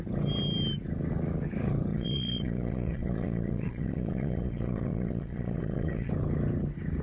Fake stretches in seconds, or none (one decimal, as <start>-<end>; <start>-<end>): 1.9-6.1